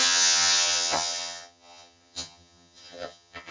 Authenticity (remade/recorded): remade